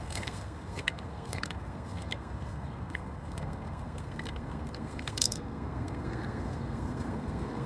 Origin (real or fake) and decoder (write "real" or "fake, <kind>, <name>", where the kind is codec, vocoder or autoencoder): fake, codec, SNAC